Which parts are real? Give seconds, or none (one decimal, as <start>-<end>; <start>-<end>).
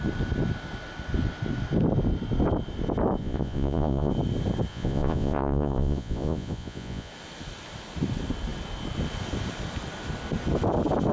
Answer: 0.0-3.2; 4.1-4.7; 7.1-11.1